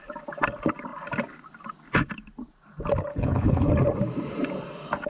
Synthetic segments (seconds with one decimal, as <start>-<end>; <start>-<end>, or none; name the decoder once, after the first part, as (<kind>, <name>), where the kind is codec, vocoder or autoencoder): 3.1-3.7 (codec, HILCodec)